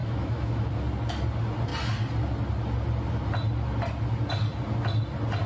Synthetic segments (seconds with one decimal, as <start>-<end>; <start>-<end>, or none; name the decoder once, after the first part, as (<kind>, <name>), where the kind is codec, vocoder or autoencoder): 0.0-0.7 (autoencoder, DAC-VAE)

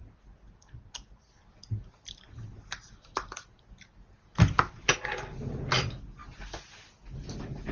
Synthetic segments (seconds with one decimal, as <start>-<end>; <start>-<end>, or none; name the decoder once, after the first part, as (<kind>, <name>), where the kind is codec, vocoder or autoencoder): none

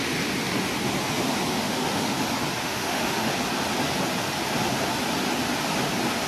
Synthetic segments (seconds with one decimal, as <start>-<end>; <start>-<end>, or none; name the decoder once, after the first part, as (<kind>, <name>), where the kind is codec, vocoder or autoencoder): 1.5-2.2 (autoencoder, DAC-VAE); 2.6-3.3

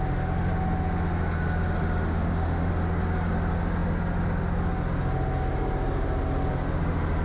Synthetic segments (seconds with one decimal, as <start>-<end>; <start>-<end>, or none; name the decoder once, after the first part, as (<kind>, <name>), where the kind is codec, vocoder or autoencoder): 2.1-2.7 (autoencoder, DAC-VAE)

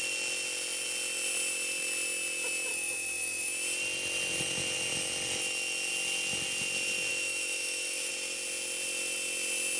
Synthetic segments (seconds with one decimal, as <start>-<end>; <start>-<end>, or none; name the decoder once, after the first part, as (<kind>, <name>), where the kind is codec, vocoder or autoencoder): 2.7-3.5 (autoencoder, DAC-VAE); 7.1-8.1